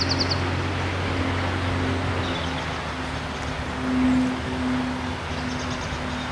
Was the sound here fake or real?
real